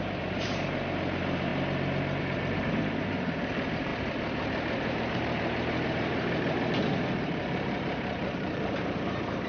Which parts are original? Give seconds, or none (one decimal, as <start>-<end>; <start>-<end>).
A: 1.5-2.2